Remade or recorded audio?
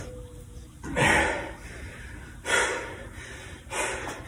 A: recorded